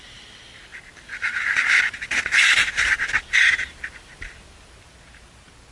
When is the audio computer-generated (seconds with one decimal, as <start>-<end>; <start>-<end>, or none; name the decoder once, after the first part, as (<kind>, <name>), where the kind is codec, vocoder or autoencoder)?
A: none